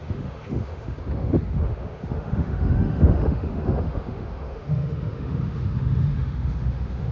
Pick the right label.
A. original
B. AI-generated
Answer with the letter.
B